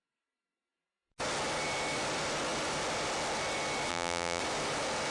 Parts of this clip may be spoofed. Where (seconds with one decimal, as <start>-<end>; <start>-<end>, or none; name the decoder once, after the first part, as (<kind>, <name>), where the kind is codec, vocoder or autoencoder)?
3.9-4.4 (vocoder, BigVGAN v2)